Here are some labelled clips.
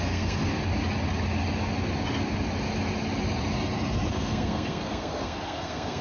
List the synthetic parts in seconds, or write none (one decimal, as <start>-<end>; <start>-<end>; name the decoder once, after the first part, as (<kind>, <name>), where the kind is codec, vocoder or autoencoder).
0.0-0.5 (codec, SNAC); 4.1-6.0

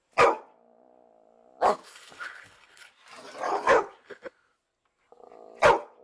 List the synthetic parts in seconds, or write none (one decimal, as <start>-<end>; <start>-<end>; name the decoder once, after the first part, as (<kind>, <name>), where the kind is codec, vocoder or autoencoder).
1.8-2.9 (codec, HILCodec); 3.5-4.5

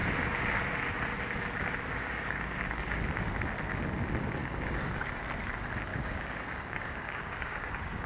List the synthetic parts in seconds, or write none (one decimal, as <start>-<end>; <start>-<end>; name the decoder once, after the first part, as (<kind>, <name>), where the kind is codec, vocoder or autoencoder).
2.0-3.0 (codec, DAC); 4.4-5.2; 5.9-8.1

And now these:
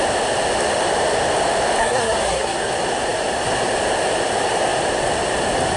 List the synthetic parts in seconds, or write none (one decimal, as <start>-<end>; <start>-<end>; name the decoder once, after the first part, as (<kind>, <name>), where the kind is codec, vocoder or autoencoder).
1.8-2.7 (codec, SNAC)